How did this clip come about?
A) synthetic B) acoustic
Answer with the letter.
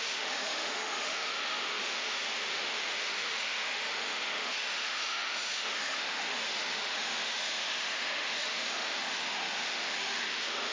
A